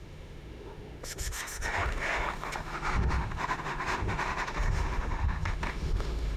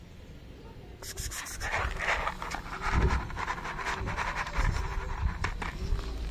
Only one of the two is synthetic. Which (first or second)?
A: first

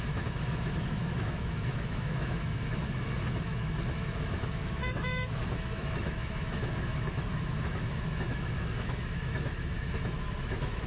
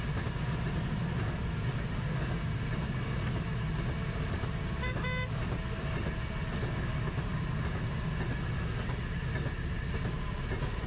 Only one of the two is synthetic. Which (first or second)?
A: first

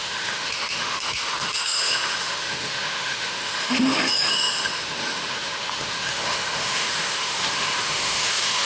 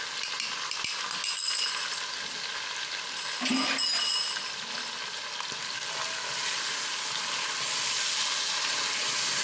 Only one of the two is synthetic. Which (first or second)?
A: first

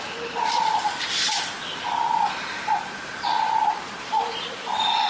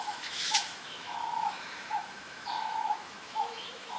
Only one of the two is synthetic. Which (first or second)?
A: second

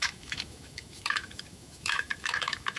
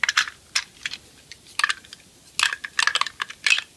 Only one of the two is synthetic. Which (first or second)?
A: first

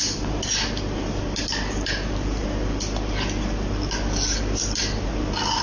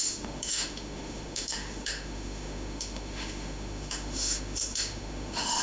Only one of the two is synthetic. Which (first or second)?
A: second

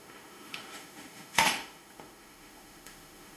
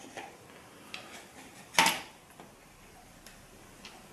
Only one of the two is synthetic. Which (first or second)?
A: first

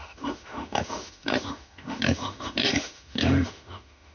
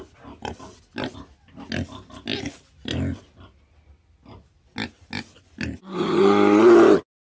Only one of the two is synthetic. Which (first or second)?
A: first